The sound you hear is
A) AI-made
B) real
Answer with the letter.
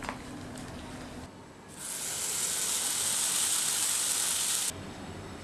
B